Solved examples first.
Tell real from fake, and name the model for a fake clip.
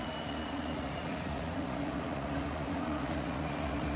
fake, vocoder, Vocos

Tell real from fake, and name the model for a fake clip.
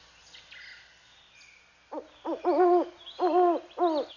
real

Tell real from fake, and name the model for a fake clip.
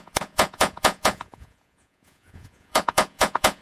fake, vocoder, Vocos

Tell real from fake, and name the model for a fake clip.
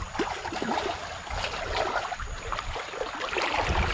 real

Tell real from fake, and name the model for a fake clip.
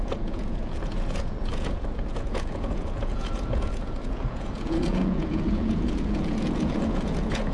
fake, vocoder, Vocos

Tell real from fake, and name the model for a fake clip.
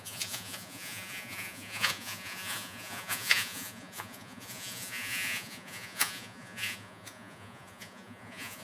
fake, vocoder, Vocos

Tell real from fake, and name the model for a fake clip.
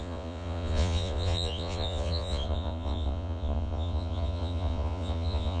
fake, vocoder, Vocos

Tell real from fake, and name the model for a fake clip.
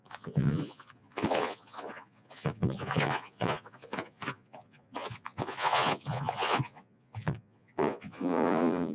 fake, vocoder, Vocos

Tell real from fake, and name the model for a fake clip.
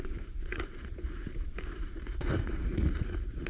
fake, vocoder, Vocos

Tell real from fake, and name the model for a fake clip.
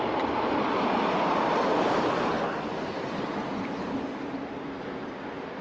real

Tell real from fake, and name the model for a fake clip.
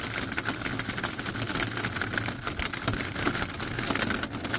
real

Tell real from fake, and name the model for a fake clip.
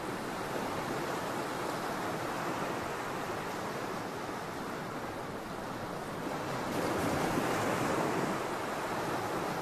real